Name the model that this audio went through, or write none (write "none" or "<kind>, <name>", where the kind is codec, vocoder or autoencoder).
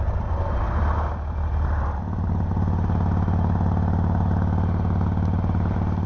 none